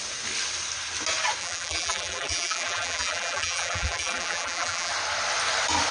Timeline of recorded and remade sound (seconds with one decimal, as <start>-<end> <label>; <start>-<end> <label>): 0.0-1.4 recorded; 1.4-4.9 remade; 4.9-5.9 recorded